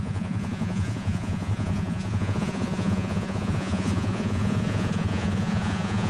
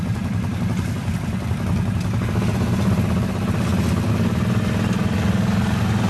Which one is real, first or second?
second